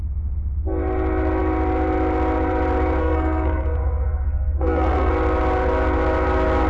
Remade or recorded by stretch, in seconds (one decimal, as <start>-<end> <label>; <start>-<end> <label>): 0.0-3.0 recorded; 3.0-5.1 remade; 5.1-6.7 recorded